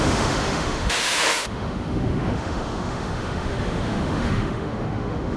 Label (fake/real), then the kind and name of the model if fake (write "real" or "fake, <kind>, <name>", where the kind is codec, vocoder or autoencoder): fake, autoencoder, DAC-VAE